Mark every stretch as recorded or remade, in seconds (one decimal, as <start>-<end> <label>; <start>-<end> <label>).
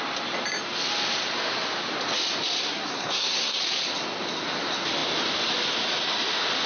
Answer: 0.0-2.6 recorded; 2.6-3.6 remade; 3.6-6.7 recorded